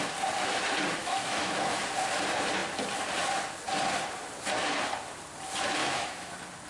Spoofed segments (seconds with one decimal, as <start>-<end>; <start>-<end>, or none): 1.0-1.8; 5.8-6.3